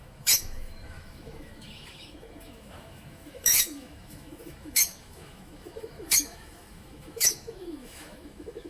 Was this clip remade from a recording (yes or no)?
yes